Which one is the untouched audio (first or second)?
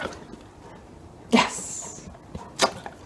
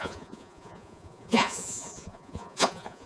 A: first